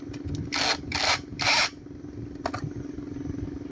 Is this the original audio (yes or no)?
yes